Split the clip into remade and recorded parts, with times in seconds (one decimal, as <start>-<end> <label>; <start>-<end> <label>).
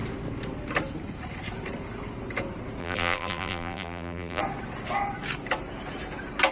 0.0-2.8 recorded; 2.8-4.4 remade; 4.4-6.5 recorded